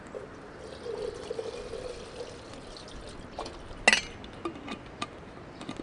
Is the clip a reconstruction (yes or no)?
no